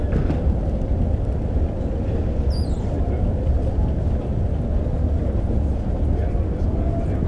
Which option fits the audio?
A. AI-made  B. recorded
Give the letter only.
B